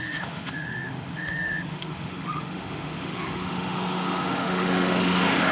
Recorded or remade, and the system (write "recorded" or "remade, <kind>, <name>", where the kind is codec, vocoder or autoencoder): remade, autoencoder, DAC-VAE